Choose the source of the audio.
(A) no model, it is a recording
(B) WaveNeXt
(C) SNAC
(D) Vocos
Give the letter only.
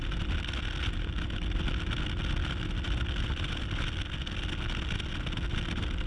A